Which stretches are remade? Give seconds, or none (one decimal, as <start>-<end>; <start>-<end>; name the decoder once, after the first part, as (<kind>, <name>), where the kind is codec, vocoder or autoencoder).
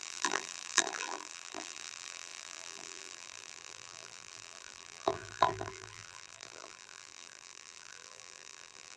0.0-9.0 (vocoder, BigVGAN v2)